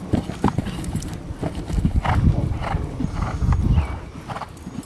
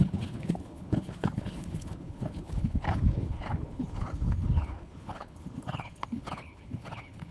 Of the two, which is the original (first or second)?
first